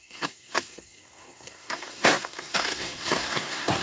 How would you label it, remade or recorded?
remade